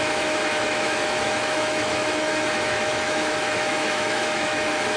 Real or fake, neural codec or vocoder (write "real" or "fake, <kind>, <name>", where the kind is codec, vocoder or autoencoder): fake, autoencoder, DAC-VAE